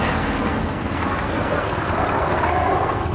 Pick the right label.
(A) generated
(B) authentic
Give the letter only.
A